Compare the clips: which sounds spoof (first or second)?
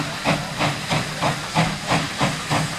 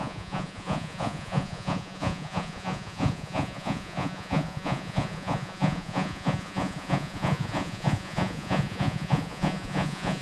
second